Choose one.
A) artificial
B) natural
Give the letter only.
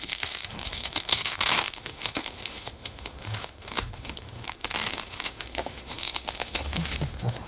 A